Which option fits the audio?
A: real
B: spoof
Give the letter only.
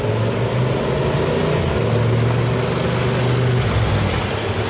A